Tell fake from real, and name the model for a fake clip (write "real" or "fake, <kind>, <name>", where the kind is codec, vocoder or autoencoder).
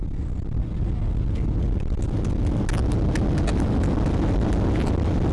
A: real